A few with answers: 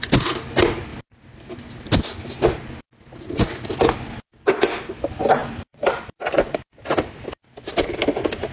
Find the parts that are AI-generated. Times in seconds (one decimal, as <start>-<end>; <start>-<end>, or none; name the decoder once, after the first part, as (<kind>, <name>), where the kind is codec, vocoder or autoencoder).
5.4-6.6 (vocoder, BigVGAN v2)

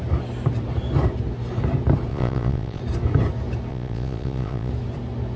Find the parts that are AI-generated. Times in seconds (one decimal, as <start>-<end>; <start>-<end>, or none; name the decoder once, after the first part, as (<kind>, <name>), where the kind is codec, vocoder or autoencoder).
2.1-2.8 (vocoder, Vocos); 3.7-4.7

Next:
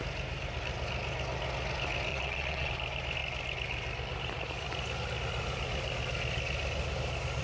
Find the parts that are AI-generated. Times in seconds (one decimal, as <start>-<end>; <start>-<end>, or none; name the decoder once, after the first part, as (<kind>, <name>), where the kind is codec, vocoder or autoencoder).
2.1-2.7 (vocoder, Vocos)

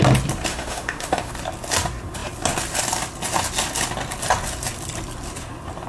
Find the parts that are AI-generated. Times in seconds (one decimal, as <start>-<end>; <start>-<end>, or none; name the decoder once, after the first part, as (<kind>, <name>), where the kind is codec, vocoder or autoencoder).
0.5-1.3 (autoencoder, DAC-VAE)